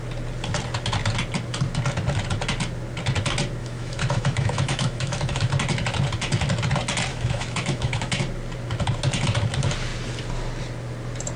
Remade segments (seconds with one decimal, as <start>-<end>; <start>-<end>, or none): 3.6-5.5; 7.1-8.2